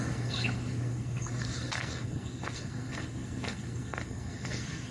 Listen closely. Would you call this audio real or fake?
fake